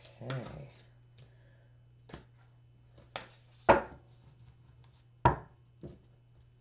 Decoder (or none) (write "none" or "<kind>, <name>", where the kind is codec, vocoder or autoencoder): none